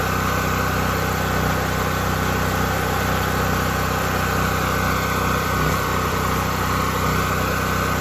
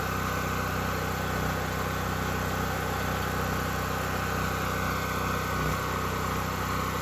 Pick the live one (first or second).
second